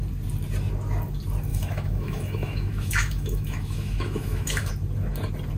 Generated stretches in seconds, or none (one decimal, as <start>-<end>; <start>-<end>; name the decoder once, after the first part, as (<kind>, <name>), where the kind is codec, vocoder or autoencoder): 1.5-4.7 (autoencoder, DAC-VAE)